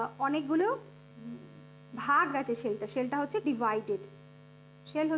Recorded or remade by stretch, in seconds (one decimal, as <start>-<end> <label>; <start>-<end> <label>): 0.0-0.6 recorded; 0.6-1.1 remade; 1.1-5.2 recorded

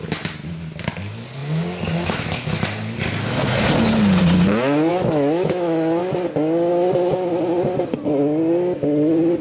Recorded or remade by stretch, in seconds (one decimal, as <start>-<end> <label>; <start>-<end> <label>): 0.0-4.9 recorded; 4.9-6.0 remade; 6.0-9.4 recorded

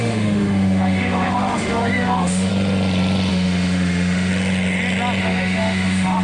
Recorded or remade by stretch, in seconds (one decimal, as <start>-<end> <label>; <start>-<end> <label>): 0.0-2.5 remade; 2.5-3.3 recorded; 3.3-4.3 remade; 4.3-5.2 recorded; 5.2-6.2 remade

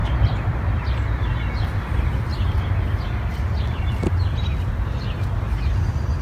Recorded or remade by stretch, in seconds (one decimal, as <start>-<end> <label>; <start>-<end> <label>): 0.0-6.2 recorded

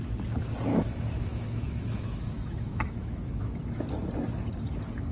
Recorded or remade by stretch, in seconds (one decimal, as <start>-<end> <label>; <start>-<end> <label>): 0.0-0.7 recorded; 0.7-3.8 remade; 3.8-5.1 recorded

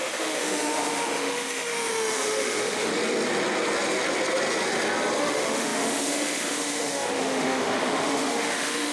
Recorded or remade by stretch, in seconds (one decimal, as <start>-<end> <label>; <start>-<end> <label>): 0.0-2.9 remade; 2.9-5.2 recorded; 5.2-8.9 remade

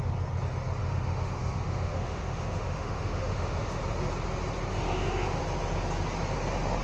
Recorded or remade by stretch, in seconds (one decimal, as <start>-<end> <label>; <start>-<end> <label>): 0.0-0.8 recorded; 0.8-3.8 remade; 3.8-4.7 recorded; 4.7-5.4 remade; 5.4-6.8 recorded

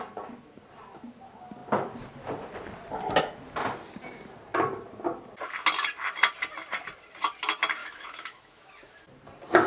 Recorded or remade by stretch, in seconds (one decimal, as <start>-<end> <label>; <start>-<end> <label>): 0.0-7.8 recorded; 7.8-9.0 remade; 9.0-9.7 recorded